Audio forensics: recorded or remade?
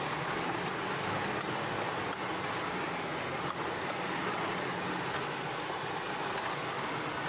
recorded